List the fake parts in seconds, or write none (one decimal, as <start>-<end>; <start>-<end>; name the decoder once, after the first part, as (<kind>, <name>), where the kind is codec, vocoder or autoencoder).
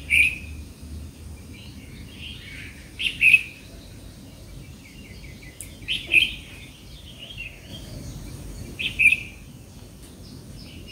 none